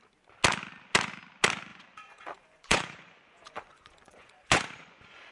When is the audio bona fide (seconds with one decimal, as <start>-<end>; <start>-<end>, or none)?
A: 0.0-1.7